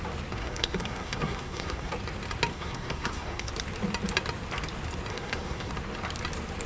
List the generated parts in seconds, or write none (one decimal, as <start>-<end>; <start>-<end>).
0.4-1.9; 2.5-3.5; 5.1-5.7